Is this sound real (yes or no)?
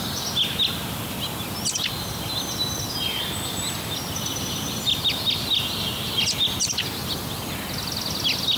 yes